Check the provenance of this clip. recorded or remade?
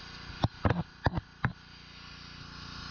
recorded